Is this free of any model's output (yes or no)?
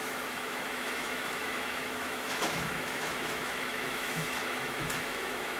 no